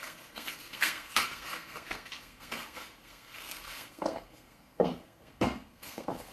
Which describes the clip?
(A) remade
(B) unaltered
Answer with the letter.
A